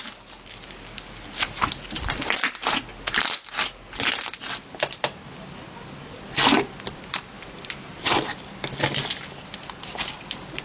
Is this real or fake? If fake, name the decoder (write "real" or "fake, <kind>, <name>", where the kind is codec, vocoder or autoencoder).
real